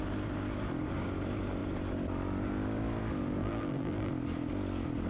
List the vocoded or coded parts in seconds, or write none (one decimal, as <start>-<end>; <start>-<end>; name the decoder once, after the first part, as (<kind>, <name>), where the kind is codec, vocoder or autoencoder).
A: 3.4-4.1 (vocoder, BigVGAN v2)